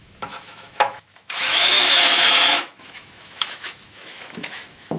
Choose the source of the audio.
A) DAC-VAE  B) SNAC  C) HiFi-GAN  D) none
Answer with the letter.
A